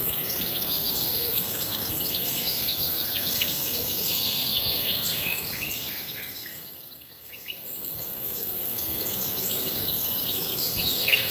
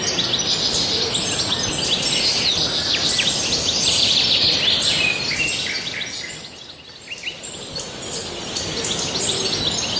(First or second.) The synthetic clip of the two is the first